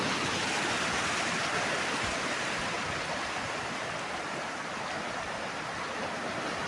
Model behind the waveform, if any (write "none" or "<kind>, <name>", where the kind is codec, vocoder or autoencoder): none